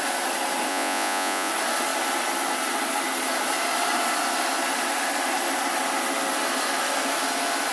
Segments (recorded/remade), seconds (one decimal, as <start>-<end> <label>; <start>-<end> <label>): 0.0-0.7 recorded; 0.7-1.5 remade; 1.5-7.7 recorded